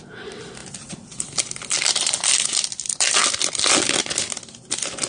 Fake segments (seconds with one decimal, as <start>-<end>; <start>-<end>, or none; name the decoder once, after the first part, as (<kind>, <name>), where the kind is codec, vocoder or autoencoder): 0.6-3.7 (vocoder, BigVGAN v2)